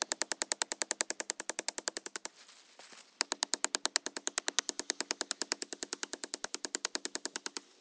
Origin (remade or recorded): recorded